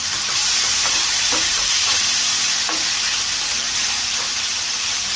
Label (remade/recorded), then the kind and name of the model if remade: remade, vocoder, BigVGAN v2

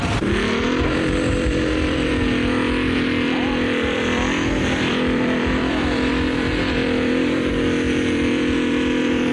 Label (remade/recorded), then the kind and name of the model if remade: remade, vocoder, BigVGAN v2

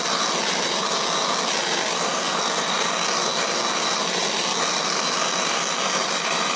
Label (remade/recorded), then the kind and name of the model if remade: recorded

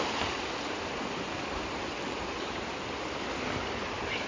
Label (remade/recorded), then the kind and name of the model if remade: remade, vocoder, BigVGAN v2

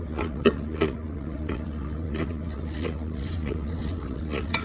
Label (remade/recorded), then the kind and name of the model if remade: remade, vocoder, WaveNeXt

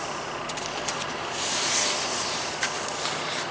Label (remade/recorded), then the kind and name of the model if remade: remade, vocoder, BigVGAN v2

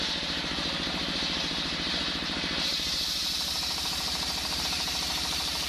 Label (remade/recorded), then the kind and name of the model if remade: remade, vocoder, BigVGAN v2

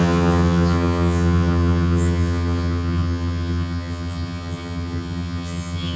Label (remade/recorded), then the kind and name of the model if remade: remade, vocoder, HiFi-GAN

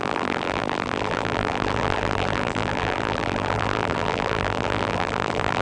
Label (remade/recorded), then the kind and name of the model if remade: remade, vocoder, BigVGAN v2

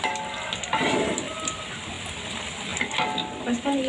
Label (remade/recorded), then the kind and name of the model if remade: recorded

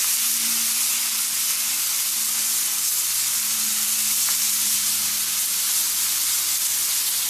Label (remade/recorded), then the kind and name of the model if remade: recorded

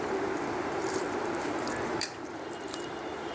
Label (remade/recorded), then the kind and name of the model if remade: remade, vocoder, BigVGAN v2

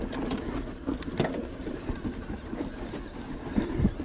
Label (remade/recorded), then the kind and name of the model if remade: recorded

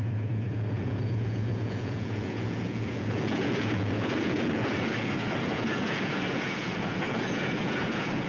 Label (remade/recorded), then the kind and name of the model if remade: remade, vocoder, Vocos